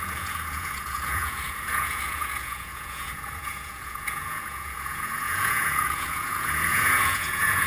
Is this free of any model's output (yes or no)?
no